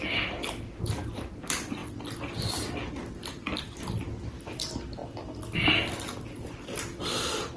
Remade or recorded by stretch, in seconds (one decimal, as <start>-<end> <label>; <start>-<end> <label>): 0.0-7.6 recorded